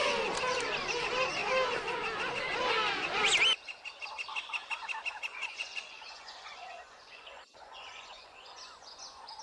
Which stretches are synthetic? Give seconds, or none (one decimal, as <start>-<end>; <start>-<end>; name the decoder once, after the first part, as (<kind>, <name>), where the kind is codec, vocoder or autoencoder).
5.3-9.4 (vocoder, Vocos)